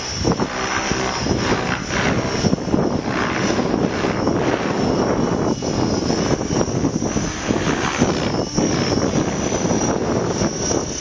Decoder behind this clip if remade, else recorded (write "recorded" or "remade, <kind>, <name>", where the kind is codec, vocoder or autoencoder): recorded